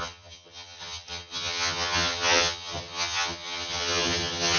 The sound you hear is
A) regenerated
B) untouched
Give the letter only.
A